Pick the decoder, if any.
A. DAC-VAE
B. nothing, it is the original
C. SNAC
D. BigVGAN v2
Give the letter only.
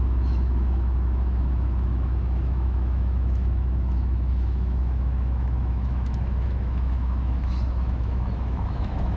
A